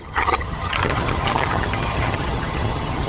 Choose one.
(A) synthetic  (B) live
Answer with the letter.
A